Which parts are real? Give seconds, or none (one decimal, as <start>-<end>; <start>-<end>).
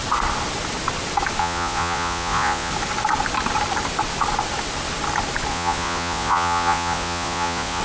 0.0-1.4; 2.7-5.5